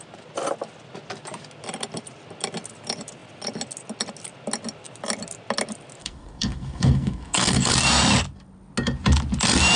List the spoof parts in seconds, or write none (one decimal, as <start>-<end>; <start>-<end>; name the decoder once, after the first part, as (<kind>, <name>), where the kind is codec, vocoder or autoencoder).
6.0-7.7 (codec, SNAC)